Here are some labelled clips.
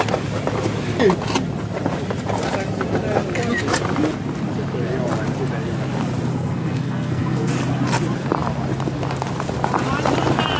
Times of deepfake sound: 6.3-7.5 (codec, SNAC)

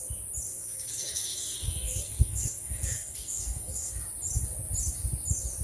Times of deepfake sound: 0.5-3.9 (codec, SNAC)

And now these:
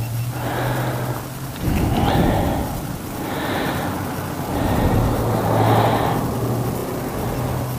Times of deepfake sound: none

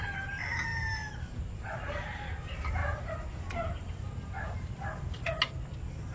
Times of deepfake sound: 0.7-2.3 (vocoder, BigVGAN v2); 2.8-5.2